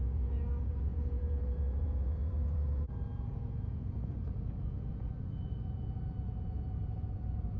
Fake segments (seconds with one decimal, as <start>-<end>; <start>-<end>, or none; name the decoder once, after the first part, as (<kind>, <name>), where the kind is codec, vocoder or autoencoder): 0.0-7.6 (vocoder, Vocos)